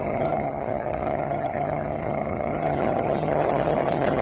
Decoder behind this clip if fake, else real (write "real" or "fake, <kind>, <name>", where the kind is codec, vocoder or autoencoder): fake, vocoder, HiFi-GAN